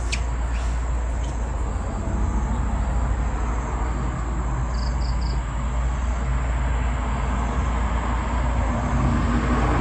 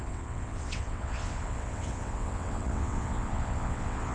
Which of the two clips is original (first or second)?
first